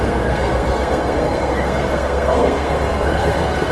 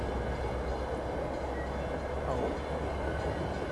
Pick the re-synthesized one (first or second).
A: first